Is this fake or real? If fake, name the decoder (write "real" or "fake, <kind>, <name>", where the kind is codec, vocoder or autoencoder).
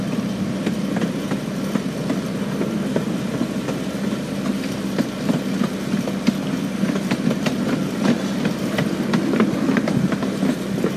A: real